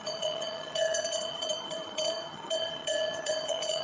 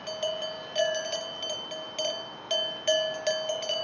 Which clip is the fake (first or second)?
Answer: first